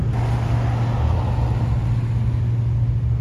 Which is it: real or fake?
real